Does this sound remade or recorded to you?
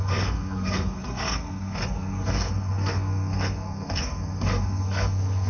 remade